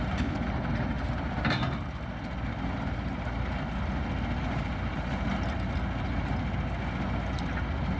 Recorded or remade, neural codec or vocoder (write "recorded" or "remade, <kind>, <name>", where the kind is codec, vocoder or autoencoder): recorded